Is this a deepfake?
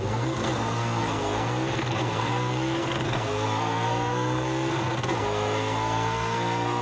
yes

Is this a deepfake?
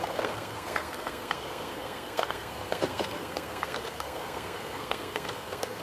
yes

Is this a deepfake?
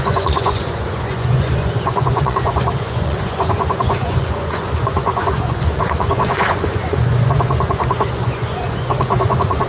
yes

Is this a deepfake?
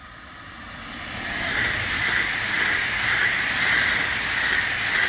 no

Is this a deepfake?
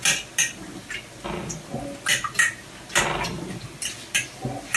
no